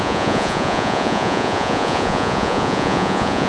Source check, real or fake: fake